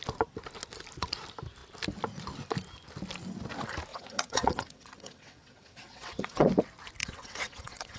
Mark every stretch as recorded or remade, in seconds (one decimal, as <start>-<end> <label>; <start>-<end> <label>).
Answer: 0.0-3.9 recorded; 3.9-6.5 remade; 6.5-7.0 recorded; 7.0-8.0 remade